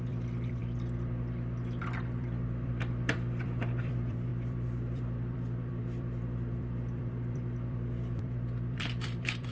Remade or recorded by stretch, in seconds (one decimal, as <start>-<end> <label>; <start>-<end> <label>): 0.0-0.6 remade; 0.6-1.8 recorded; 1.8-9.5 remade